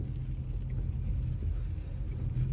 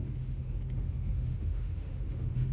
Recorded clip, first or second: first